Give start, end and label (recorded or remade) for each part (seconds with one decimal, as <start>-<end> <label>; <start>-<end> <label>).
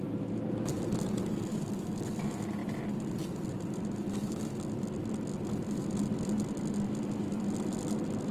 0.0-8.3 recorded